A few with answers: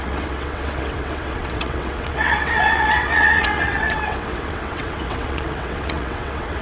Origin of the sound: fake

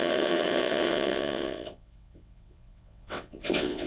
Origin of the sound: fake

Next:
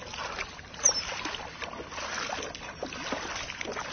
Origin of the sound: real